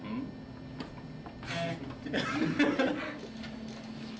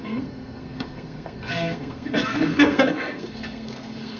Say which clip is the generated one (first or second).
second